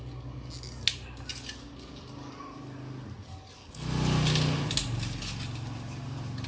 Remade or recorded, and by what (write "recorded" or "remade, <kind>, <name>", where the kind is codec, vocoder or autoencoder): recorded